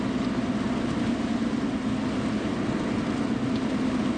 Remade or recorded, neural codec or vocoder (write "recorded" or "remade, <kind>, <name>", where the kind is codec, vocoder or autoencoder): recorded